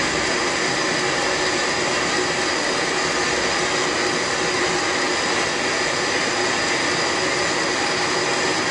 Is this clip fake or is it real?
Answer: real